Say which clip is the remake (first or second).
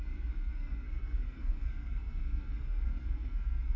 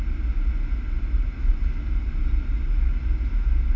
first